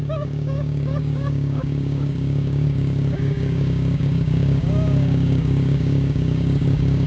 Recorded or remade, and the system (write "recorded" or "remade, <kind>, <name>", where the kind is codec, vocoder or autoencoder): remade, codec, DAC